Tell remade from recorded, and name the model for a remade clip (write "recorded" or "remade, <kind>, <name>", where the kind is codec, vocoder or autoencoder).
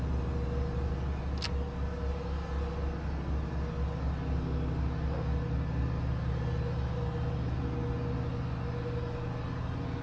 recorded